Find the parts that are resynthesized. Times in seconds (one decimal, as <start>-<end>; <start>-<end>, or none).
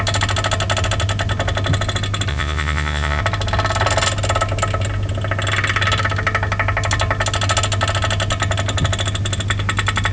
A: 2.3-3.2